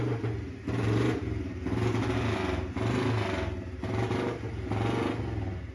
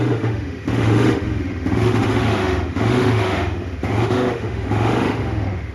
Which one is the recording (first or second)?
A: first